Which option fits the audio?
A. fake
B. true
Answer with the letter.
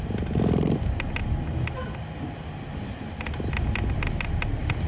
B